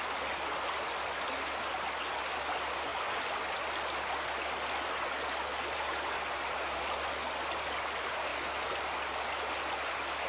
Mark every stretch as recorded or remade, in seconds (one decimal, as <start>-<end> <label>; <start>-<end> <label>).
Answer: 0.0-10.3 recorded

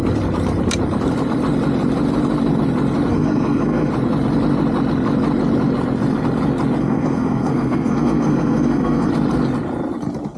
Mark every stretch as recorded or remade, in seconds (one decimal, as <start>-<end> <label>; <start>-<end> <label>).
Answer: 0.0-3.1 recorded; 3.1-3.9 remade; 3.9-6.8 recorded; 6.8-9.1 remade; 9.1-10.4 recorded

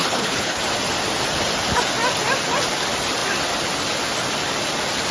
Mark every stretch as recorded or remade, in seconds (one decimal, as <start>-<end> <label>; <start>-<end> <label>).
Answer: 0.0-0.6 remade; 0.6-5.1 recorded